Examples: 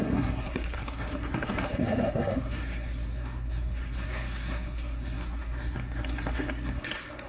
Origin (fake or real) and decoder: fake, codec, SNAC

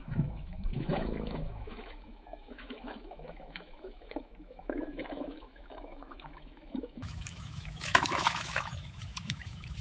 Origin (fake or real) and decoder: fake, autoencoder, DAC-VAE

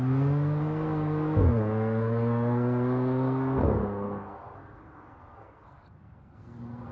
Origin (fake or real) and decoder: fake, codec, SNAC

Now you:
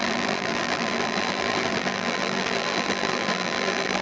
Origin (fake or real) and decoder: fake, vocoder, BigVGAN v2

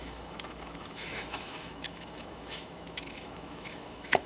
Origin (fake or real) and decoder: fake, autoencoder, DAC-VAE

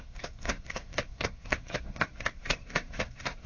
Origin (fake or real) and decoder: fake, codec, SNAC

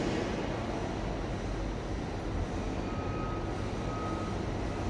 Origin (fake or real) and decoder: real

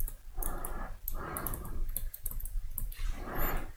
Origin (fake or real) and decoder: real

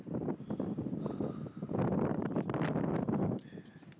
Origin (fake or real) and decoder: real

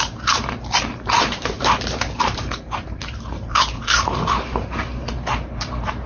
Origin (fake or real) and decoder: fake, vocoder, BigVGAN v2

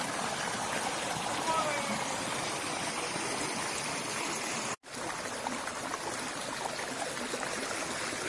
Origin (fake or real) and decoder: real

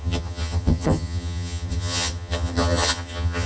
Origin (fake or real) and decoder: fake, vocoder, HiFi-GAN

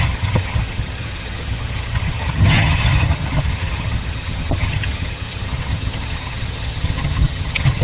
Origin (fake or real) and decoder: fake, vocoder, HiFi-GAN